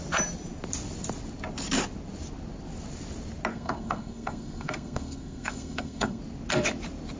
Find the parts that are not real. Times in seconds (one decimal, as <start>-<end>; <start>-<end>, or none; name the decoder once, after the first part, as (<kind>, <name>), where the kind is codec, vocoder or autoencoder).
3.5-6.2 (codec, SNAC)